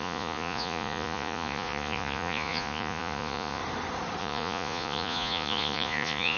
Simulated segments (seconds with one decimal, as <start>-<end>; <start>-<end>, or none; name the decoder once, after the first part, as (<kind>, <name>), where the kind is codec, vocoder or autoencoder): 0.0-3.6 (vocoder, Vocos); 4.2-6.4